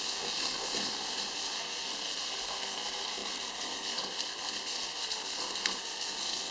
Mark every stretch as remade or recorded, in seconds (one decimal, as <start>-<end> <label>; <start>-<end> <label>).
0.0-6.5 remade